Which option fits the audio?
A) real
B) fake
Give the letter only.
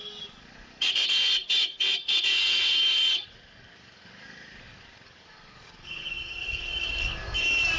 B